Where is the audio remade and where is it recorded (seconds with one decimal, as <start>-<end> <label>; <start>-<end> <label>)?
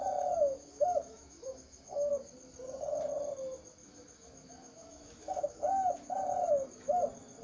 0.0-0.4 recorded; 0.4-2.1 remade; 2.1-3.8 recorded; 3.8-6.2 remade; 6.2-7.4 recorded